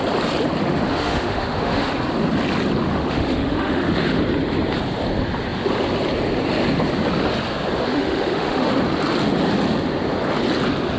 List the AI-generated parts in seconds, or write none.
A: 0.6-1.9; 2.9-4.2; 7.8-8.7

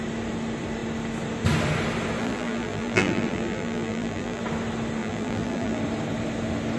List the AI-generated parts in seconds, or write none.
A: 2.2-4.4; 5.0-5.8